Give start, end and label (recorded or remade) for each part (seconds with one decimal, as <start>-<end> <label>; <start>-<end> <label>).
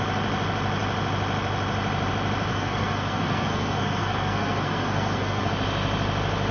0.0-2.5 recorded; 2.5-5.5 remade; 5.5-6.5 recorded